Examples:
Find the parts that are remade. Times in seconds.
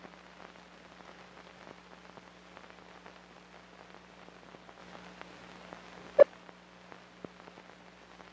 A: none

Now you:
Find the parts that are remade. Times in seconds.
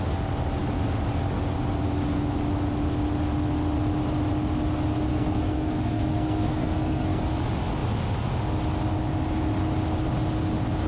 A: 5.1-7.2 (codec, SNAC)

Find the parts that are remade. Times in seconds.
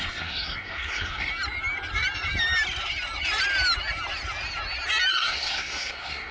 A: 0.0-1.3 (codec, SNAC); 5.1-6.3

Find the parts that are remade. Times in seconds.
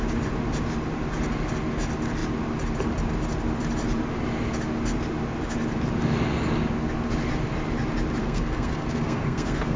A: 8.2-9.8 (codec, SNAC)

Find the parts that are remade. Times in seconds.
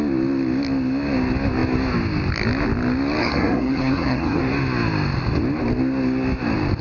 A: 3.2-4.4 (codec, SNAC)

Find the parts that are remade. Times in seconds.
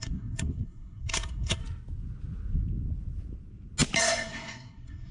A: 0.0-1.6 (codec, SNAC); 4.0-5.1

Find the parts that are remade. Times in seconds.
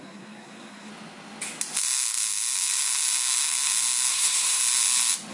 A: 0.0-0.9 (codec, SNAC); 4.1-4.6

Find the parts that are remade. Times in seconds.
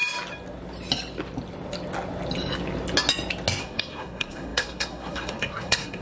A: 3.6-6.0 (codec, SNAC)